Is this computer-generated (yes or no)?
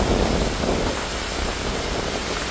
yes